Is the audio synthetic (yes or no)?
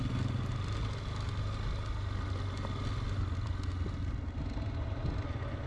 no